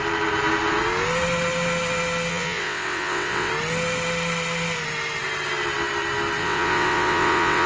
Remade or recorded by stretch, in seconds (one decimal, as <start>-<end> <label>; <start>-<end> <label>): 0.0-2.3 recorded; 2.3-3.5 remade; 3.5-6.4 recorded; 6.4-7.7 remade